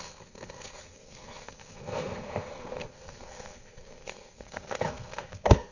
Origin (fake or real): fake